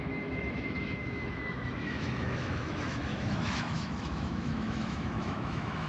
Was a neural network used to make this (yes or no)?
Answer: yes